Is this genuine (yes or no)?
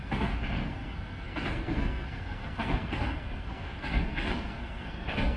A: no